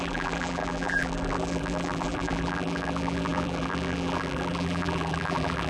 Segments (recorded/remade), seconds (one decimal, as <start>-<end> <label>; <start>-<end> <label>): 0.0-5.7 remade